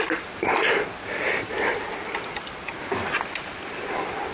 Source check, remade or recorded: recorded